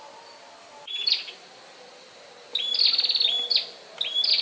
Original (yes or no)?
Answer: yes